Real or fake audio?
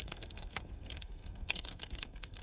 fake